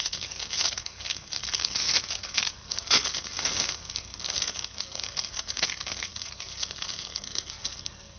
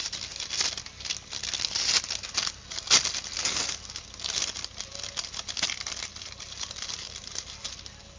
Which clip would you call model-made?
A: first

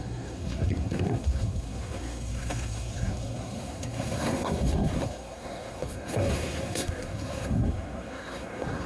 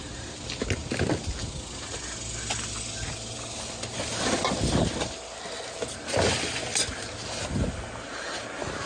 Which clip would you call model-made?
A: first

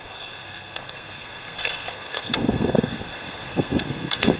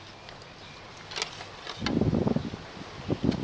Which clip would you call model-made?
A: first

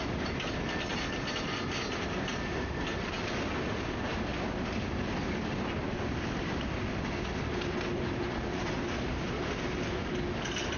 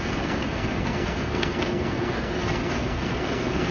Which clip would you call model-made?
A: second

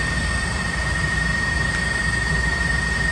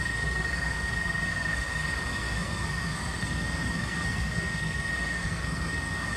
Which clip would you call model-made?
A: second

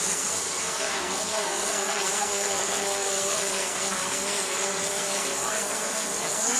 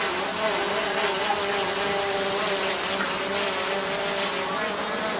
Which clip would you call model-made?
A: first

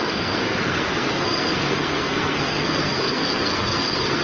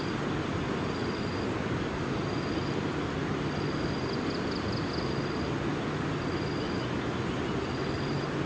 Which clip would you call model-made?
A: first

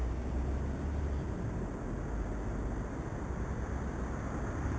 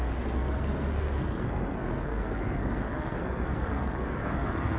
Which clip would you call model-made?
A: second